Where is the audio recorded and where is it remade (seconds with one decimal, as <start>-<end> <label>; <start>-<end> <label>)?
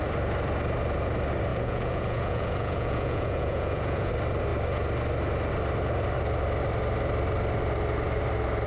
0.0-1.5 recorded; 1.5-4.1 remade; 4.1-8.7 recorded